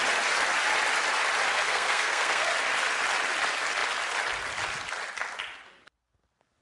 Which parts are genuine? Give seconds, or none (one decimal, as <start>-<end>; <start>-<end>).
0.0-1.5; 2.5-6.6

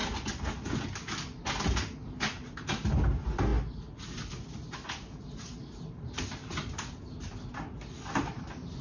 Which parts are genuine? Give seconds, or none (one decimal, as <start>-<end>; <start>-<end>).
0.0-3.5; 4.9-8.8

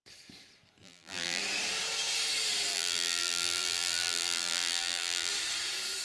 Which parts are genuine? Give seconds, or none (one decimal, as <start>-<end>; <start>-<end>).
0.0-0.8; 1.4-2.7; 5.3-6.0

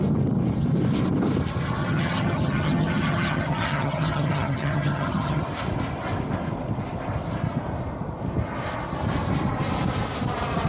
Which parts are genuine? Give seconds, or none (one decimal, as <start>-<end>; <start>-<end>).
0.0-1.8; 5.4-10.7